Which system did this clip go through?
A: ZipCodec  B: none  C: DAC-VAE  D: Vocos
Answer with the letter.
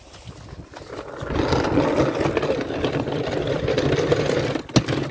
B